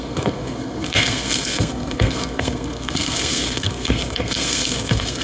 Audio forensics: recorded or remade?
remade